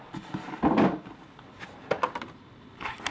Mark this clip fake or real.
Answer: real